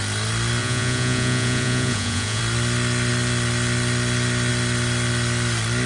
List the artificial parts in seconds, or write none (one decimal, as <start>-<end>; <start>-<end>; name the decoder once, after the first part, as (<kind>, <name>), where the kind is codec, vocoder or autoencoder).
0.6-2.4 (vocoder, Vocos)